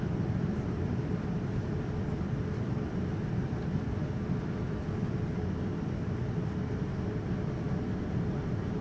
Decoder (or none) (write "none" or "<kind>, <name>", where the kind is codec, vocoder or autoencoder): none